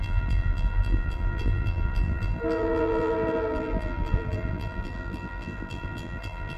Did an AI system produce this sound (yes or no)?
yes